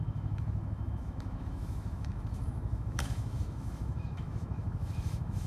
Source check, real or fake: fake